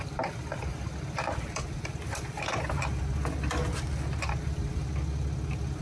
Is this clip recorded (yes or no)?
yes